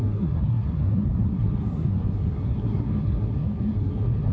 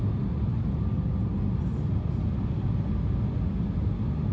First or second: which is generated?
first